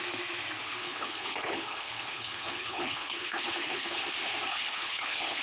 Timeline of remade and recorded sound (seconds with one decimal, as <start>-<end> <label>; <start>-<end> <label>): 0.0-0.8 recorded; 0.8-4.0 remade; 4.0-4.5 recorded; 4.5-5.4 remade